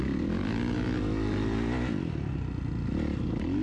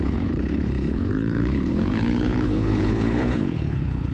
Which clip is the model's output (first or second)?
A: second